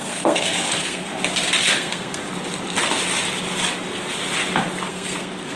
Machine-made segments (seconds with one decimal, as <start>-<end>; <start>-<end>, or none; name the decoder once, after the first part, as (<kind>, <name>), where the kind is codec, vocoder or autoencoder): 0.0-1.1 (codec, SNAC); 1.6-2.2; 4.9-5.6